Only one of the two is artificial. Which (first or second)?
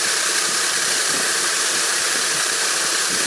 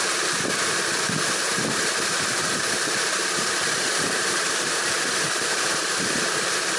second